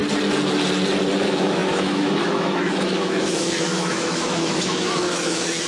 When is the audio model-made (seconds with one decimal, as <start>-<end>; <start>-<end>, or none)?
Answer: 1.2-5.7